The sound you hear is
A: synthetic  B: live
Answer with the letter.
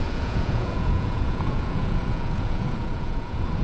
A